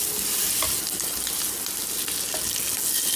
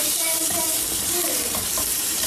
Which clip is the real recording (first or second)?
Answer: first